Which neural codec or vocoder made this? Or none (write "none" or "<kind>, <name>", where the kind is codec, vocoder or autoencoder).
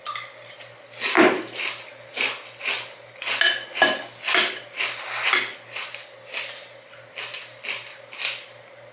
none